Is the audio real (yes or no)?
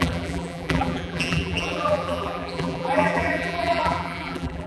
no